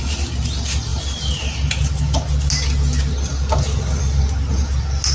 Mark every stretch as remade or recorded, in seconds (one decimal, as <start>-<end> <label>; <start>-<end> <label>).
0.0-5.1 recorded